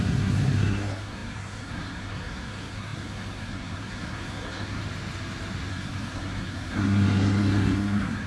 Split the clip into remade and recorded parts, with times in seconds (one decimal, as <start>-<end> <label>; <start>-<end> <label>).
0.0-4.8 remade; 4.8-5.7 recorded; 5.7-8.3 remade